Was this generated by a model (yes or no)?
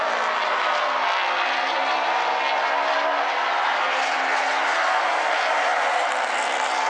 no